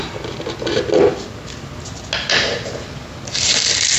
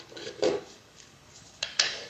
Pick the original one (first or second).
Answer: first